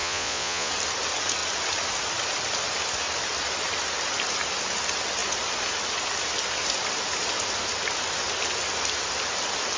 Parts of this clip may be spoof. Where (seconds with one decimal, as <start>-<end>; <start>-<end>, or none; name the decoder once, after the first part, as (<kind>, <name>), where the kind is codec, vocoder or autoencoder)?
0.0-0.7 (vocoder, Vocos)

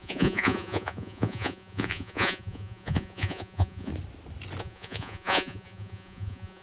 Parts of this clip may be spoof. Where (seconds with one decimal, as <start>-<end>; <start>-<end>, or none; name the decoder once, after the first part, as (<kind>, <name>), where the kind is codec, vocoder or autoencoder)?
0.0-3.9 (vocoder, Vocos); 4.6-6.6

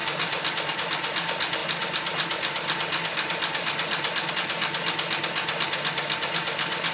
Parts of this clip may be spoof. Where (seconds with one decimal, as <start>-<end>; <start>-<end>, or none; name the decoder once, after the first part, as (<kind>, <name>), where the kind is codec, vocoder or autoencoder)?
none